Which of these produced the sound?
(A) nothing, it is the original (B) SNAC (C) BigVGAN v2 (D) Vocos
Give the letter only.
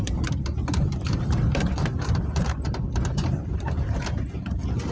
C